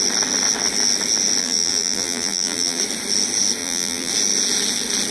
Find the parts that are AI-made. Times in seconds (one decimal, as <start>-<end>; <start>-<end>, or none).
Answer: 1.4-2.8; 3.6-4.1